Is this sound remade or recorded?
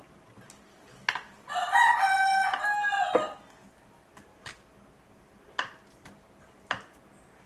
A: recorded